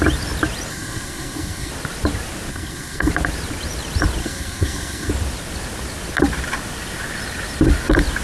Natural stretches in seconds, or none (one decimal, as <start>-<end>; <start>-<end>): 0.0-0.7; 1.7-2.5; 3.1-4.2; 5.1-8.2